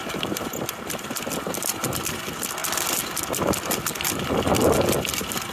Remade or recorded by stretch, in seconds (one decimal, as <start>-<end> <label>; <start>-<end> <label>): 0.0-2.2 remade; 2.2-5.5 recorded